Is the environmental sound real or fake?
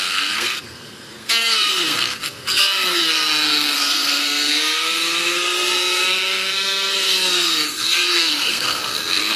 fake